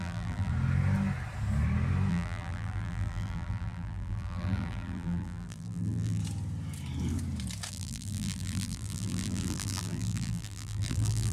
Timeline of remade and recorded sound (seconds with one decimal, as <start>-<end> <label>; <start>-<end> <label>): 0.0-0.5 remade; 0.5-2.1 recorded; 2.1-6.2 remade; 6.2-7.7 recorded; 7.7-11.3 remade